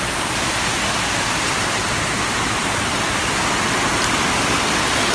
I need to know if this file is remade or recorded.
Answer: recorded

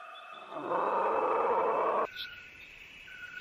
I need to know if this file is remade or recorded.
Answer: remade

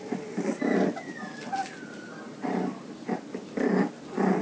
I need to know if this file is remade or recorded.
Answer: recorded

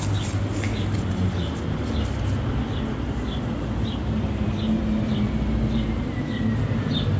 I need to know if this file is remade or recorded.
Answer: remade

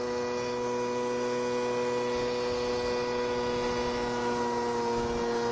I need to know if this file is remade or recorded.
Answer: recorded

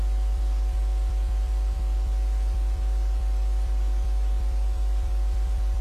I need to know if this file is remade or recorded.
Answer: remade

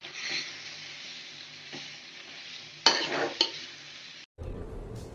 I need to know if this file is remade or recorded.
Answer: recorded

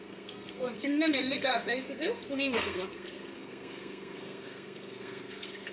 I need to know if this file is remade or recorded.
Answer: remade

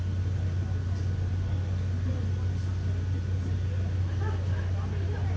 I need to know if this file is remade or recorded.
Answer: recorded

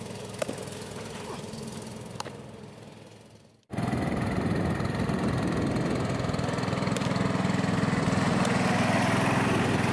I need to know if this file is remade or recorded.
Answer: recorded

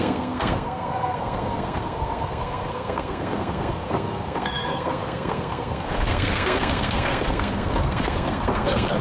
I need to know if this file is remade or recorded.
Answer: remade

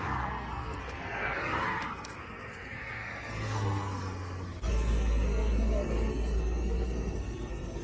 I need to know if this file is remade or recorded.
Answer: remade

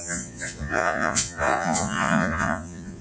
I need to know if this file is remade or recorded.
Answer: remade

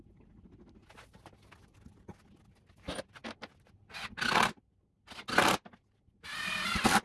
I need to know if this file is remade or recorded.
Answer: recorded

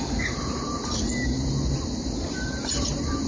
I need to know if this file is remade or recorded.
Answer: recorded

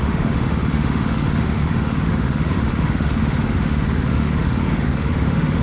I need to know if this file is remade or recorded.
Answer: remade